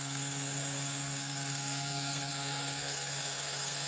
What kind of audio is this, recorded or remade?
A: remade